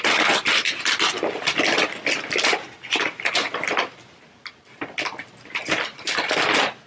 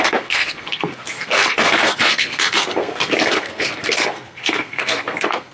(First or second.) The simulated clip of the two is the second